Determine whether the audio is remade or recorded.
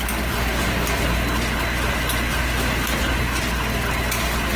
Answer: recorded